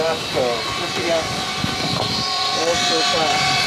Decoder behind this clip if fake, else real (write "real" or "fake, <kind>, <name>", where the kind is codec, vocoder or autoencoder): real